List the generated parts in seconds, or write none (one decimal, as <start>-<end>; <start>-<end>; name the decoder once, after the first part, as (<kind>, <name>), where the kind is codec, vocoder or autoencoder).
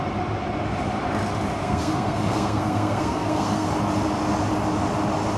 1.6-3.7 (codec, SNAC)